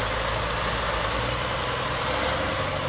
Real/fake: real